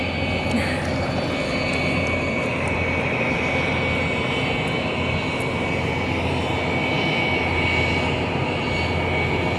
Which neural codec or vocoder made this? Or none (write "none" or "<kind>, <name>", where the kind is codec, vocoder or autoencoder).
none